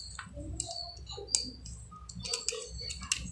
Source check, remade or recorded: recorded